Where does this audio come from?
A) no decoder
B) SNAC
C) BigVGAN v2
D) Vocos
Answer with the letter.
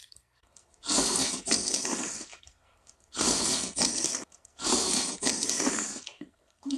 B